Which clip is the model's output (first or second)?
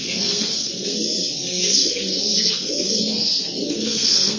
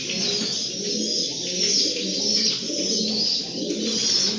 first